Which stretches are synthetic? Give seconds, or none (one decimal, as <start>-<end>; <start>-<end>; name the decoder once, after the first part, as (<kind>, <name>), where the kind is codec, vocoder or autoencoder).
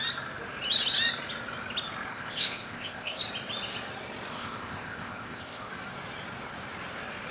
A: 2.1-3.2 (codec, ZipCodec); 4.3-5.7